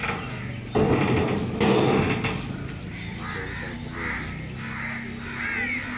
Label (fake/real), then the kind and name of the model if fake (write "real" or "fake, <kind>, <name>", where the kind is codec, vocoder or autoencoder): real